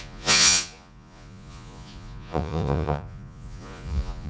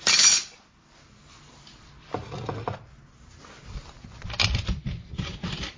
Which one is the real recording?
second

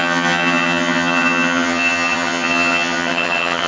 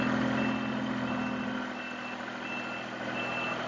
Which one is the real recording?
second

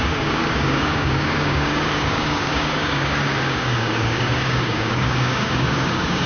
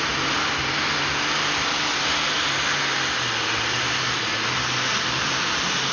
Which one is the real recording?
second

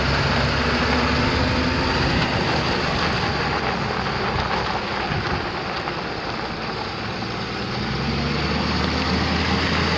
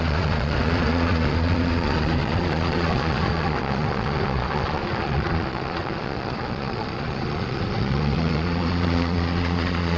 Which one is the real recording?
first